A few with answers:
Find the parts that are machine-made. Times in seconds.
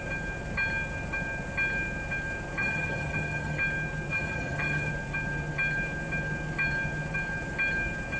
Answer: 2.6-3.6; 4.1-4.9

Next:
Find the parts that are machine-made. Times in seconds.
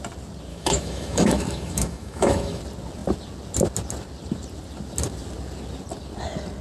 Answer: 0.5-2.6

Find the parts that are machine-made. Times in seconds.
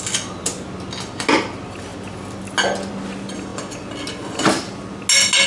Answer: none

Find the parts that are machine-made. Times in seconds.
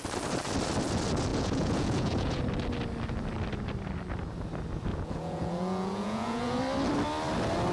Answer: 1.3-2.4; 4.9-6.6